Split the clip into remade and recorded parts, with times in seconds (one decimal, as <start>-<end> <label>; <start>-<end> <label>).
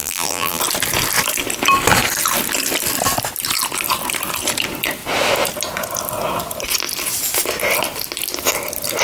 0.0-0.6 remade; 0.6-9.0 recorded